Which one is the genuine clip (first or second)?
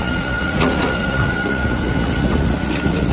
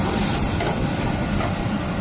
second